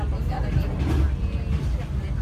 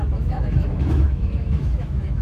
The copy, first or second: second